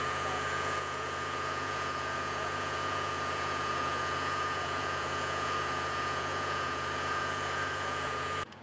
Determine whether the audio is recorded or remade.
remade